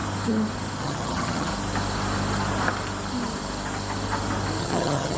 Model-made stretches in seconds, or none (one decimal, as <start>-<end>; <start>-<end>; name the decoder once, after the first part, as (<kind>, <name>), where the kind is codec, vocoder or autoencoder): 0.8-1.5 (vocoder, HiFi-GAN); 4.6-5.2

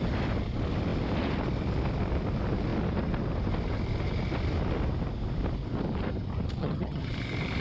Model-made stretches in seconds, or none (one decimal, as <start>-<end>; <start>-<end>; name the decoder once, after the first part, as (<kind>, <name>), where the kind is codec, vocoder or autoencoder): 6.6-7.1 (vocoder, HiFi-GAN)

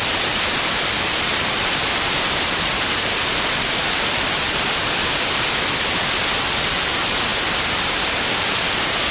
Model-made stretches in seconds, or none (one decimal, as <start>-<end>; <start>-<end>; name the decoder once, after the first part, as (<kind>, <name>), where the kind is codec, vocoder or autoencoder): none

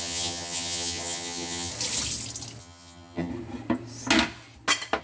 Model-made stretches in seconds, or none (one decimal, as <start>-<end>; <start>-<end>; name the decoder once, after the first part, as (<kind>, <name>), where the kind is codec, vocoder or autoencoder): 0.0-1.7 (vocoder, HiFi-GAN); 2.6-3.3

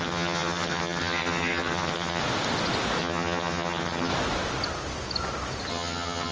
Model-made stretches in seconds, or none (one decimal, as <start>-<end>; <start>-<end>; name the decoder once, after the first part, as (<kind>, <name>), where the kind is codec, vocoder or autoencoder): 0.0-2.2 (vocoder, HiFi-GAN); 3.0-4.1; 5.7-6.3

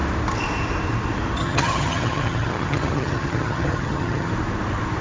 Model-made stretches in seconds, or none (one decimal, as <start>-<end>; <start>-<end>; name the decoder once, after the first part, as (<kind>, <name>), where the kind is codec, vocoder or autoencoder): 1.4-4.3 (vocoder, HiFi-GAN)

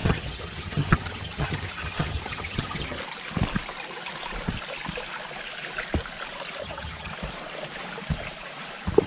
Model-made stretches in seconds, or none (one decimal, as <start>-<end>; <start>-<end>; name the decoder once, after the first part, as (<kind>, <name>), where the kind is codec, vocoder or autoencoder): 0.0-3.0 (vocoder, HiFi-GAN); 6.6-7.1